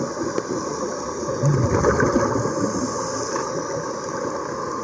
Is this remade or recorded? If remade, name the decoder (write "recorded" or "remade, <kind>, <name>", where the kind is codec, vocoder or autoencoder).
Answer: recorded